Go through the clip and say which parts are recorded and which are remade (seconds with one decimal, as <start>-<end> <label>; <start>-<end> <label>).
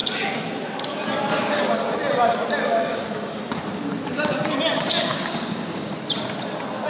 0.0-2.6 recorded; 2.6-3.4 remade; 3.4-5.1 recorded; 5.1-5.9 remade; 5.9-6.9 recorded